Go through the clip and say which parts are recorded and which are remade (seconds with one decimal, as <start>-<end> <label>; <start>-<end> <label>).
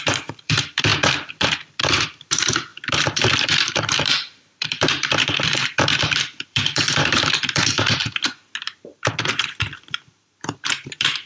0.0-8.0 remade; 8.0-8.6 recorded; 8.6-11.3 remade